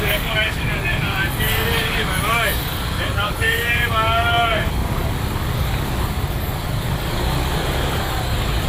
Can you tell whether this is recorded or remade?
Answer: remade